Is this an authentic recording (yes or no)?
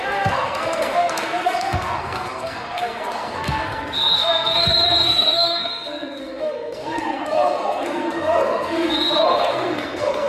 no